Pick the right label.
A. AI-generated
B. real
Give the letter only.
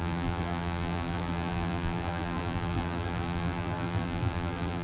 A